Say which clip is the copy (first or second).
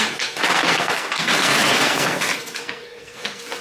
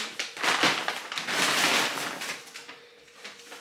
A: first